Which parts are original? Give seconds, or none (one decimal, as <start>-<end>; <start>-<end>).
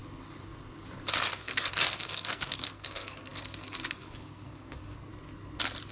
0.0-1.3; 5.1-5.9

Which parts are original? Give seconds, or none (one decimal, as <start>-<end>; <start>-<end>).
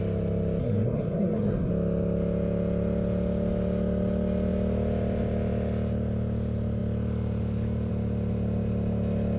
0.0-0.6; 1.7-9.4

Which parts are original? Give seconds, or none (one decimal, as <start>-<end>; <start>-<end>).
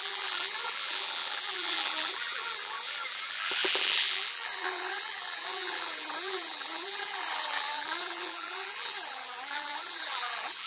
none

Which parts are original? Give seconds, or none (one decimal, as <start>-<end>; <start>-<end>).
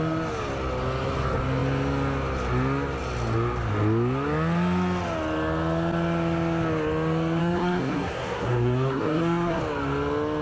0.0-7.4; 9.6-10.4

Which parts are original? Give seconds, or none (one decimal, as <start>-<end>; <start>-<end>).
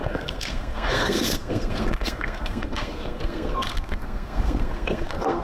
none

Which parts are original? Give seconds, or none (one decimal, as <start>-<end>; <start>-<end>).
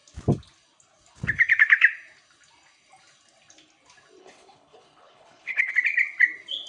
0.0-4.2; 5.7-6.7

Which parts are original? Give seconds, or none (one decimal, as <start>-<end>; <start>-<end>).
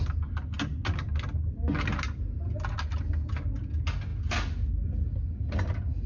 0.0-6.1